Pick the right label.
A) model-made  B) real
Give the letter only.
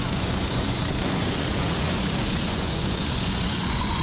A